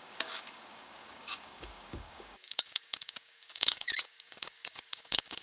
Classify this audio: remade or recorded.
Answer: remade